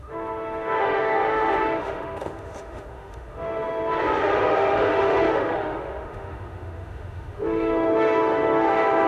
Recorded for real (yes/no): no